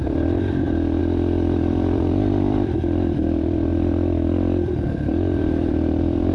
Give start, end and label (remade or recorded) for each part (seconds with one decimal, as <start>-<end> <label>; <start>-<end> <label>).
0.0-6.3 remade